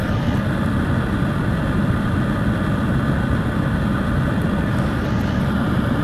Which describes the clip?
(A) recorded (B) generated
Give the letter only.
A